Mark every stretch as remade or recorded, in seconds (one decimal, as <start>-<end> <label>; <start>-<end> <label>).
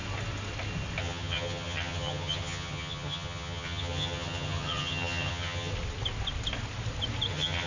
0.0-1.0 recorded; 1.0-5.7 remade; 5.7-7.3 recorded; 7.3-7.7 remade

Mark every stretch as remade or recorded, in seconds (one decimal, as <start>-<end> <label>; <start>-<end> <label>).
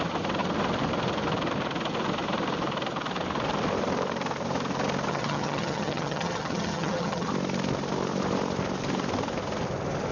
0.0-5.1 recorded; 5.1-7.3 remade; 7.3-10.1 recorded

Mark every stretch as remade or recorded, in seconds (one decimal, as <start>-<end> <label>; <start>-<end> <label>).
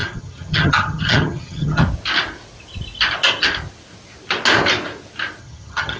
0.0-1.8 remade; 1.8-5.4 recorded; 5.4-6.0 remade